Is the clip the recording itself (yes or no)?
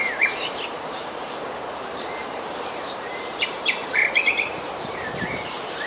no